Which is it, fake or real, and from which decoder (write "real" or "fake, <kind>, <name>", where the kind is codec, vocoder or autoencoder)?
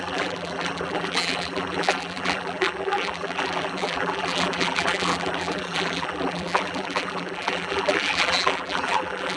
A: fake, vocoder, BigVGAN v2